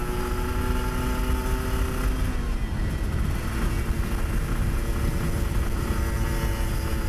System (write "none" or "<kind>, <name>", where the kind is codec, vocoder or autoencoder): none